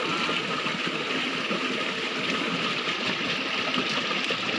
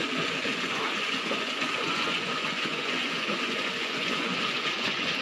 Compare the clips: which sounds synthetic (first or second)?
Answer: second